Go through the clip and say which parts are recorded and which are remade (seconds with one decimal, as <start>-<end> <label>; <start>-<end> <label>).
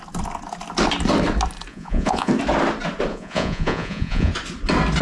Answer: 0.0-1.7 recorded; 1.7-2.3 remade; 2.3-3.1 recorded; 3.1-4.3 remade; 4.3-5.0 recorded